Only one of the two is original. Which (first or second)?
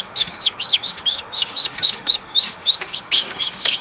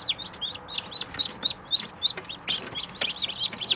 second